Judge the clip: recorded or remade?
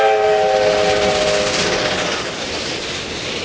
recorded